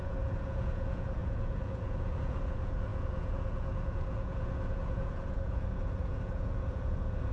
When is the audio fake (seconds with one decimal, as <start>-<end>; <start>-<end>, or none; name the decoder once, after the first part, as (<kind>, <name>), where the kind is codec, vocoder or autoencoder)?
0.0-7.3 (vocoder, Vocos)